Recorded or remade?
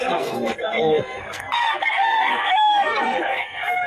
remade